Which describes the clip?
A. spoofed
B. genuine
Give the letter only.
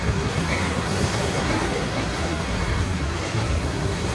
A